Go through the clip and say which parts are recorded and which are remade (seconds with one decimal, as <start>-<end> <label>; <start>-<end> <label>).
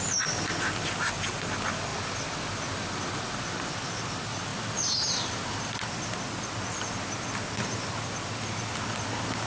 0.0-9.5 recorded